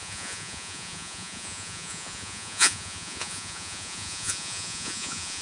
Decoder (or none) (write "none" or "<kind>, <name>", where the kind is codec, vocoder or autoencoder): vocoder, Vocos